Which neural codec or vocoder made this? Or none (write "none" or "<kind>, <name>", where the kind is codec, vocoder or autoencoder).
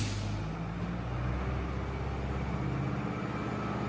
none